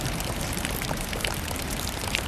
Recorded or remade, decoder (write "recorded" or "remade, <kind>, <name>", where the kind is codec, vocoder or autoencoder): remade, vocoder, BigVGAN v2